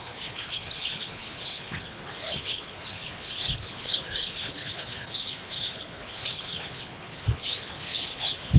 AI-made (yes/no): yes